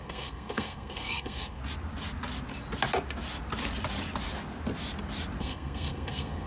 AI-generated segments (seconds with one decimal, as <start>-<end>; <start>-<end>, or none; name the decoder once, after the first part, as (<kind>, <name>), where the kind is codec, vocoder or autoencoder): 0.0-1.6 (codec, SNAC); 5.4-6.5